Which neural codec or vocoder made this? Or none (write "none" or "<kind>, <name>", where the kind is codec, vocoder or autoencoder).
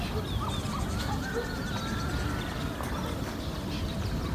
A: none